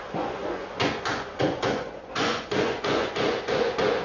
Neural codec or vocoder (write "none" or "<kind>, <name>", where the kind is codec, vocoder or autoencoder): vocoder, Vocos